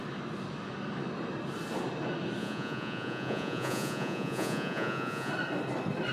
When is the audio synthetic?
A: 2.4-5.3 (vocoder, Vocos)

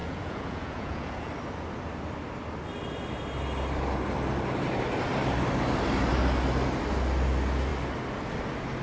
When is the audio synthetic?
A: 0.0-1.3 (vocoder, Vocos)

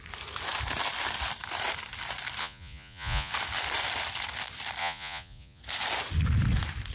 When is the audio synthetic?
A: 2.4-3.3 (vocoder, Vocos); 4.8-5.6